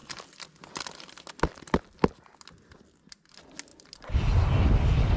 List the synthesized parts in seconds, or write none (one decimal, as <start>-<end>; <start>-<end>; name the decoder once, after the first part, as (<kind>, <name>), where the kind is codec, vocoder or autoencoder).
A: none

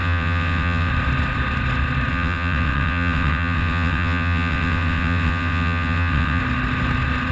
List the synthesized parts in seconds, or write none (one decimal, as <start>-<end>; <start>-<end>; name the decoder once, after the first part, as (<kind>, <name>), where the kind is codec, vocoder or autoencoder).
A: 0.0-0.9 (vocoder, WaveNeXt); 2.1-6.4

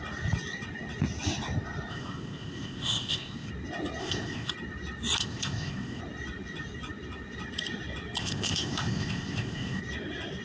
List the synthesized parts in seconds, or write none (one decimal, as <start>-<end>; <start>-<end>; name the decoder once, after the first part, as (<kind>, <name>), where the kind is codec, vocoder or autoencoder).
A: 1.9-3.5 (codec, ZipCodec); 4.0-4.5; 5.2-6.0; 8.2-9.8

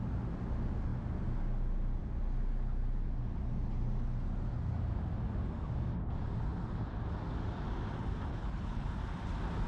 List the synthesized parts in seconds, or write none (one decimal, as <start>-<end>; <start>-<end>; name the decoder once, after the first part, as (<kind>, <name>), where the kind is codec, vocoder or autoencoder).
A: 8.3-9.0 (codec, HILCodec)

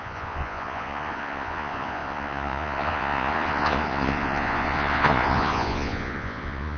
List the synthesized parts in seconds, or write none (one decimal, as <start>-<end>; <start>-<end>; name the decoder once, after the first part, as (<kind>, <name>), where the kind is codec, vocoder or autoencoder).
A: 0.0-6.8 (vocoder, Vocos)

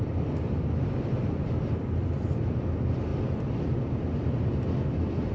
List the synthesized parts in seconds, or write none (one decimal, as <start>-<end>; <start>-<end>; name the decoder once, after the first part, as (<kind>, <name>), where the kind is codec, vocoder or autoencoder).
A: none